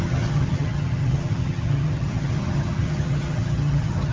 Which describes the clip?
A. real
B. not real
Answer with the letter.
B